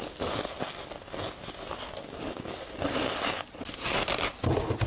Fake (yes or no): no